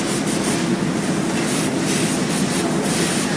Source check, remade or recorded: recorded